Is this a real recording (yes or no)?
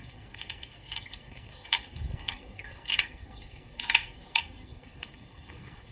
no